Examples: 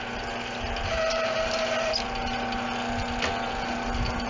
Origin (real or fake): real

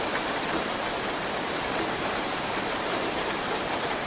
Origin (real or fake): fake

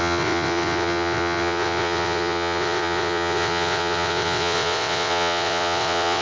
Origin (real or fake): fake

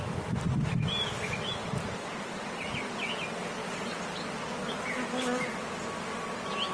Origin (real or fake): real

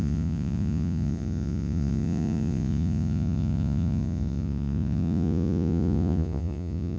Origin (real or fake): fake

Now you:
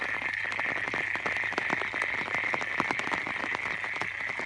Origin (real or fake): real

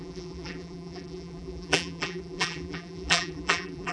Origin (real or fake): fake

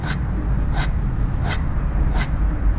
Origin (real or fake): fake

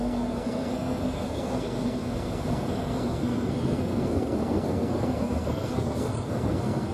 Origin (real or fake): fake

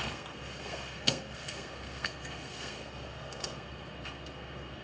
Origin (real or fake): fake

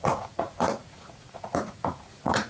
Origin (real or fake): fake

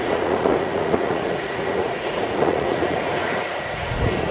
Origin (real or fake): fake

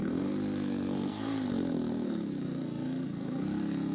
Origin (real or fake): fake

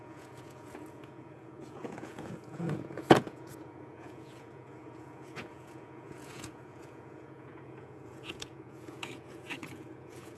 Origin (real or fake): fake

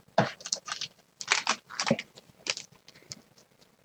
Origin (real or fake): fake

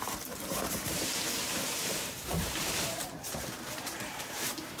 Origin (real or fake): fake